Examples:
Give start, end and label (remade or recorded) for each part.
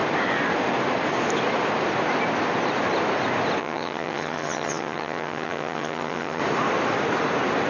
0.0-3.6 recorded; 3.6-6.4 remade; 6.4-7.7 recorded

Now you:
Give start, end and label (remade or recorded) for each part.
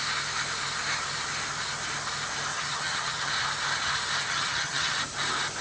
0.0-2.5 recorded; 2.5-3.3 remade; 3.3-4.2 recorded; 4.2-5.0 remade; 5.0-5.6 recorded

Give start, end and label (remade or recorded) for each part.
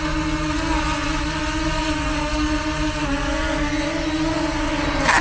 0.0-5.2 recorded